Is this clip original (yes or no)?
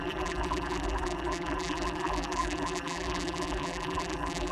no